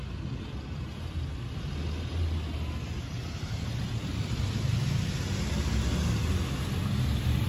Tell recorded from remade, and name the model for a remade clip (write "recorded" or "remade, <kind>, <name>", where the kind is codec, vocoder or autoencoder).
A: recorded